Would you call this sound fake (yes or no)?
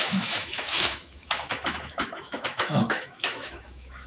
yes